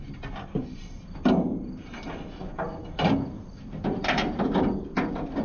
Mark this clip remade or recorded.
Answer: recorded